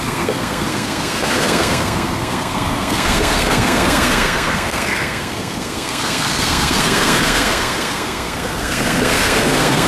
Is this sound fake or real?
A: fake